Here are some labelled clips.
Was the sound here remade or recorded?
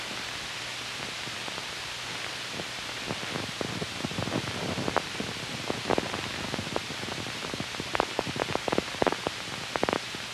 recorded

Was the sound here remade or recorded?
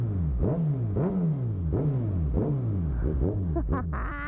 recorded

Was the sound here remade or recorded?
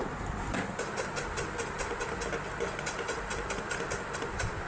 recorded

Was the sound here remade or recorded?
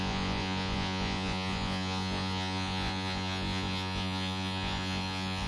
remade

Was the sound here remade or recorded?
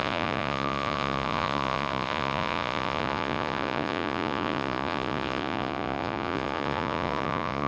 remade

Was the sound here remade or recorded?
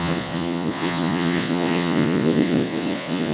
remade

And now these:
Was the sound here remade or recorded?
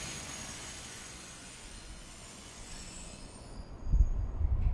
remade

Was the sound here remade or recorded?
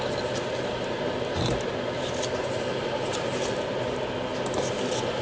recorded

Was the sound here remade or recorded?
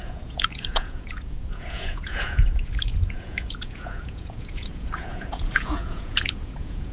remade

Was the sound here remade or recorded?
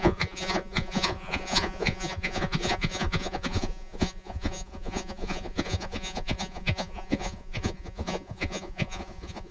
remade